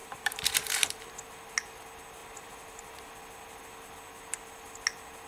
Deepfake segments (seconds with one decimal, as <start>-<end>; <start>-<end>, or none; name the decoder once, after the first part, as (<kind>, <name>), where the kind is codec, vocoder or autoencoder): 0.0-1.1 (vocoder, BigVGAN v2); 2.2-3.1